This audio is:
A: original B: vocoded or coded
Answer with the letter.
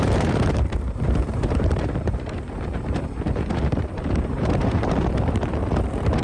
B